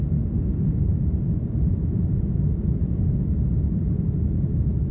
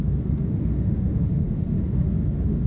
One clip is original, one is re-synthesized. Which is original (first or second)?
first